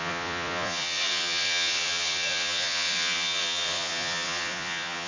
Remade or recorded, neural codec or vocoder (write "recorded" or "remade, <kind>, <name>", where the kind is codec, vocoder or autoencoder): remade, vocoder, Vocos